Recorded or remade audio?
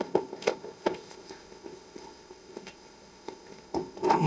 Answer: remade